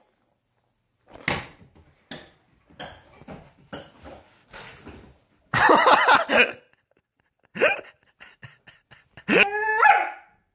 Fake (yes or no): no